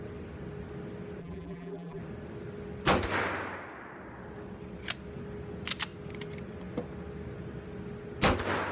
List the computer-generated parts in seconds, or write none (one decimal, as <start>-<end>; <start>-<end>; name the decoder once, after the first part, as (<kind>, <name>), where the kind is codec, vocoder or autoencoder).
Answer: 1.2-2.0 (vocoder, BigVGAN v2)